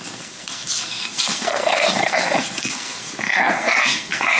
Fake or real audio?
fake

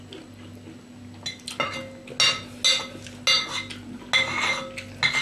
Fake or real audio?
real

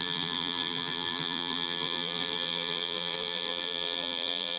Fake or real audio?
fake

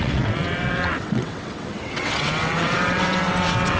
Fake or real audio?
fake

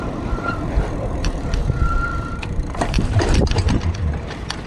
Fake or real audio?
fake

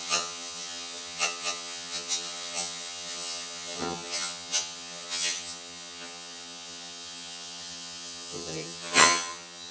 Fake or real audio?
fake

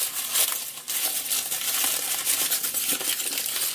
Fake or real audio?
real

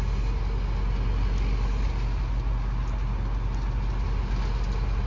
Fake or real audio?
real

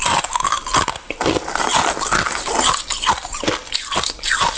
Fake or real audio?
real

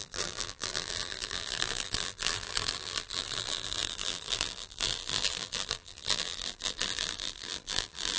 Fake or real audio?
fake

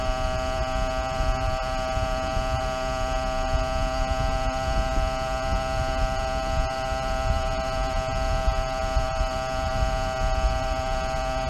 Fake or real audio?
real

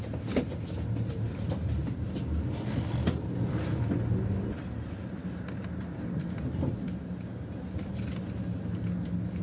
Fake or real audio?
real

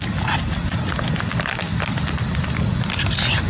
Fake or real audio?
real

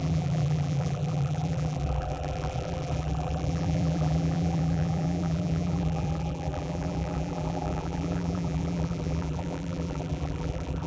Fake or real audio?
fake